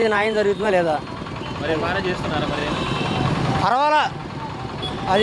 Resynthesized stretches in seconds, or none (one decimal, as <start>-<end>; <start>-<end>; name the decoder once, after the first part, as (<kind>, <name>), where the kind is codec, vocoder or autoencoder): 0.0-0.7 (vocoder, BigVGAN v2)